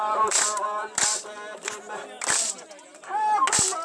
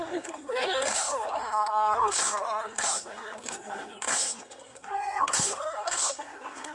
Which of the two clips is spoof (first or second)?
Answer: second